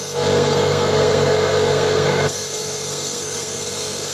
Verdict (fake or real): fake